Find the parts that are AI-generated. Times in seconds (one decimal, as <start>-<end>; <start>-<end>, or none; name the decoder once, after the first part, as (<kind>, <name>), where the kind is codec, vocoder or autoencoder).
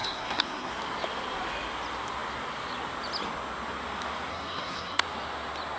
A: 0.0-0.7 (codec, SNAC); 4.3-5.0